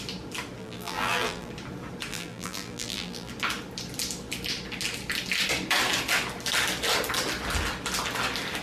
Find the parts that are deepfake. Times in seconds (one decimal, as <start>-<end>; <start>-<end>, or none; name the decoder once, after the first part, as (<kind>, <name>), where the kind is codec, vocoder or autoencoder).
0.6-1.5 (vocoder, BigVGAN v2); 2.1-3.3